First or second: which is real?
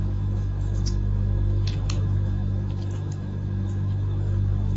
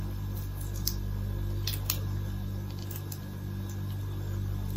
second